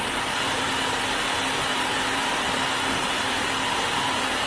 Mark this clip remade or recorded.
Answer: remade